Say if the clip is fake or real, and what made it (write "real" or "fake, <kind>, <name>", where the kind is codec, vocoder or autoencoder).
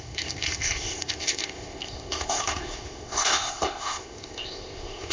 fake, codec, ZipCodec